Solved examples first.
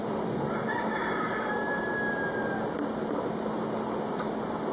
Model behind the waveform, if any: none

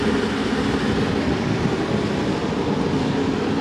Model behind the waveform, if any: none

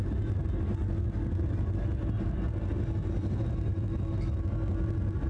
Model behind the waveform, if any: none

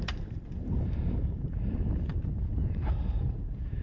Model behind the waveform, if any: vocoder, BigVGAN v2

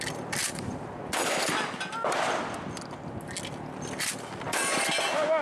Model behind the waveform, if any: none